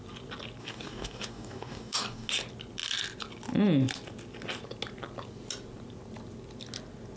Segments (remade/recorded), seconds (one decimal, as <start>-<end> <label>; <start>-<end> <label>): 0.0-0.6 recorded; 0.6-2.3 remade; 2.3-7.2 recorded

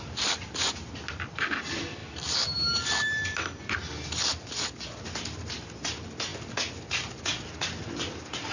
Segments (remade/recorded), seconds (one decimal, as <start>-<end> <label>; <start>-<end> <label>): 0.0-8.5 recorded

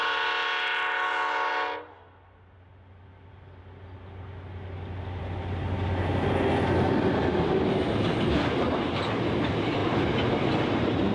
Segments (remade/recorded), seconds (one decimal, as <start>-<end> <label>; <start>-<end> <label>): 0.0-11.1 recorded

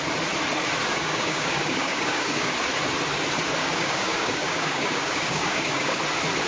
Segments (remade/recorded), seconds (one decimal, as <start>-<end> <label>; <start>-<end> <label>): 0.0-0.9 recorded; 0.9-2.5 remade; 2.5-3.6 recorded; 3.6-6.0 remade; 6.0-6.5 recorded

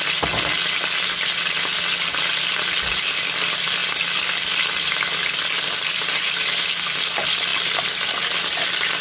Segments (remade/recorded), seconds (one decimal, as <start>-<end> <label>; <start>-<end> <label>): 0.0-9.0 recorded

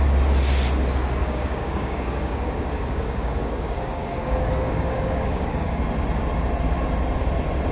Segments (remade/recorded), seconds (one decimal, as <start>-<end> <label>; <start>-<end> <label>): 0.0-1.2 recorded; 1.2-5.8 remade; 5.8-7.7 recorded